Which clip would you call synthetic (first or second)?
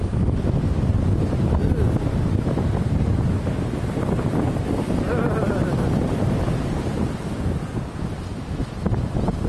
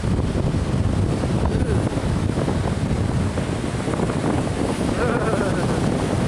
second